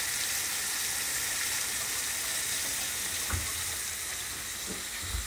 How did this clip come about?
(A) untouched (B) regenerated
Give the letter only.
A